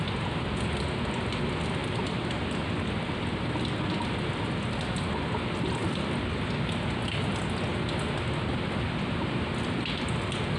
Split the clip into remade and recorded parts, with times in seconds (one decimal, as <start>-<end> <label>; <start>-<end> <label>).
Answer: 0.0-10.6 recorded